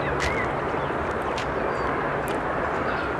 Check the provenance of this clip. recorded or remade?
recorded